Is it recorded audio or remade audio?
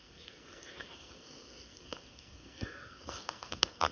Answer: remade